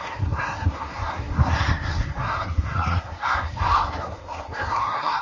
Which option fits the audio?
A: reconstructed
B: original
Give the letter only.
A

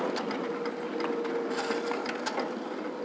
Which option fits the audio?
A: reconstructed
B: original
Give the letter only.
B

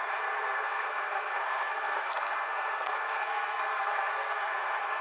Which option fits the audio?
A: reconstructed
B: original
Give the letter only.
A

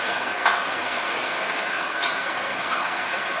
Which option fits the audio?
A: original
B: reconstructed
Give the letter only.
B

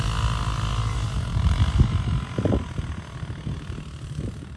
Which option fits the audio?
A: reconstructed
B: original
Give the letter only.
B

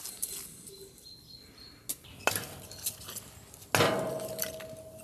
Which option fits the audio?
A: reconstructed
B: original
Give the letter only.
B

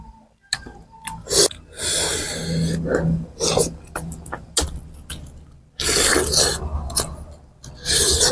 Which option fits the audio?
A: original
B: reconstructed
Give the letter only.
A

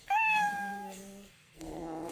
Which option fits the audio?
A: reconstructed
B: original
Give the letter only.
A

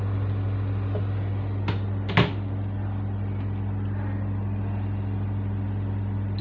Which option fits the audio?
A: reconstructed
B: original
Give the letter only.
B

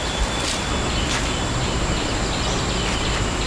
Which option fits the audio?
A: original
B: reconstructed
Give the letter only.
A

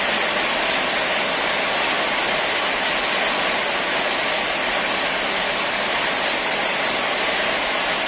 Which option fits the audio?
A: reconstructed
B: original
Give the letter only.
B